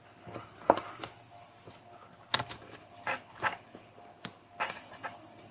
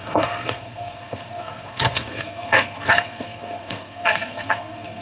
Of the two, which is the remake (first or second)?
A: second